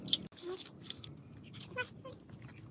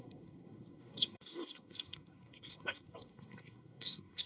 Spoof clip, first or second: second